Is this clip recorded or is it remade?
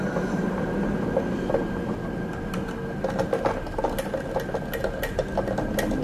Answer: recorded